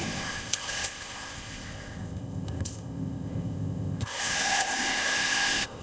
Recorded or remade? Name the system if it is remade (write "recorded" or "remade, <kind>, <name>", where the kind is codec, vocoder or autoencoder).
remade, codec, ZipCodec